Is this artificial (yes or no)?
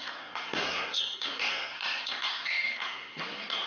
yes